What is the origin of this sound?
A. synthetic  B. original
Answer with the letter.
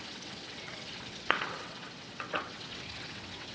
A